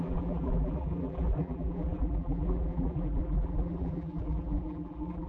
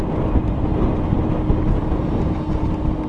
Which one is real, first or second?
second